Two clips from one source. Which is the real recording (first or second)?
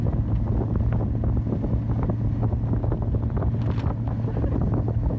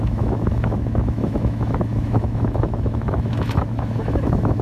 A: first